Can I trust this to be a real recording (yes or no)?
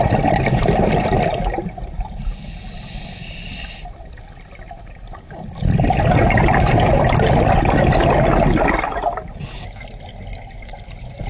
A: yes